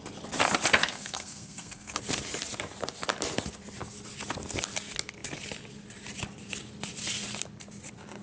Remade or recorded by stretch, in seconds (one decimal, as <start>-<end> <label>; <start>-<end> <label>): 0.0-0.8 recorded; 0.8-2.0 remade; 2.0-8.2 recorded